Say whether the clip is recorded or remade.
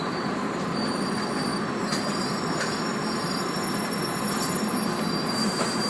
remade